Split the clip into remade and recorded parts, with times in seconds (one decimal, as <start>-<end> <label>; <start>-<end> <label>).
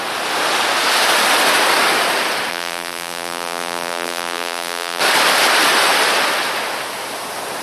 0.0-2.5 recorded; 2.5-5.0 remade; 5.0-7.6 recorded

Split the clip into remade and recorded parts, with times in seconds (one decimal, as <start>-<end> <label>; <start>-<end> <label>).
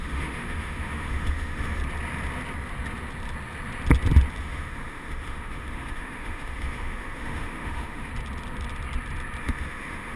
0.0-1.8 remade; 1.8-4.4 recorded; 4.4-8.1 remade; 8.1-9.4 recorded; 9.4-10.2 remade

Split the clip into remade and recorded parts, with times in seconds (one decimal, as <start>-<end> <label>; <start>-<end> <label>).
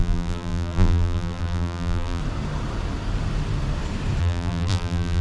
0.0-2.2 remade; 2.2-4.2 recorded; 4.2-5.2 remade